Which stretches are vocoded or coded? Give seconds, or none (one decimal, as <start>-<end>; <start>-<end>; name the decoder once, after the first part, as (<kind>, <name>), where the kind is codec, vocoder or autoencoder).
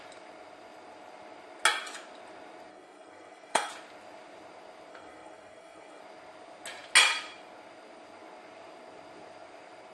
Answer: 2.7-3.7 (codec, SNAC); 4.9-6.0